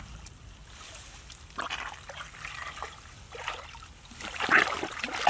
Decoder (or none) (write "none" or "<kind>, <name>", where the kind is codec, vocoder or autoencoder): vocoder, BigVGAN v2